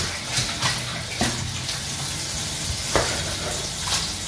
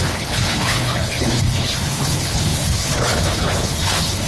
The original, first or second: first